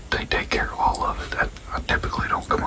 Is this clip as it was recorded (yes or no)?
yes